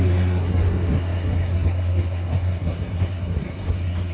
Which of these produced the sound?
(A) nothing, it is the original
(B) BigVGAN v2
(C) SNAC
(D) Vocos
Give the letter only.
C